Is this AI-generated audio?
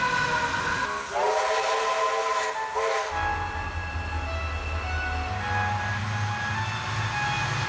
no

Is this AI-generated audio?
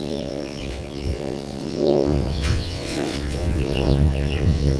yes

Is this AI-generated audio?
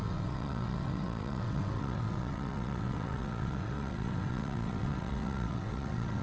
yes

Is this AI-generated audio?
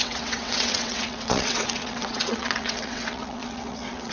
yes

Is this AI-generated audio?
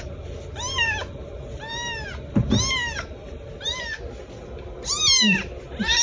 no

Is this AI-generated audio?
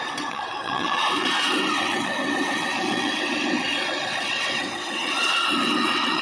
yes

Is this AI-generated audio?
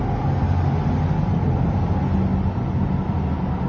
no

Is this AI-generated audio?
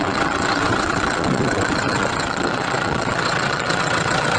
yes